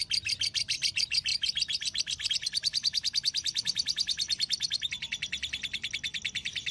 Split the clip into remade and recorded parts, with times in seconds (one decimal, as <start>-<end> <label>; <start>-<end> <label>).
0.0-6.7 recorded